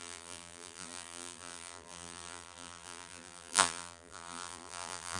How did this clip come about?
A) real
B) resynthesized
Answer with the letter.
B